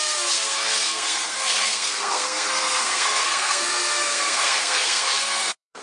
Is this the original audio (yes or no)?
no